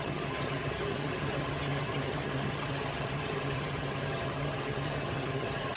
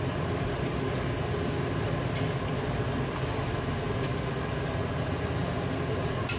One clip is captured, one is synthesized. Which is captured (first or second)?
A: second